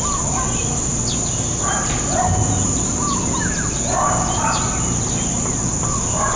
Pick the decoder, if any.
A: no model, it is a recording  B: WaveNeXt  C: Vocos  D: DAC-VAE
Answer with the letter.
A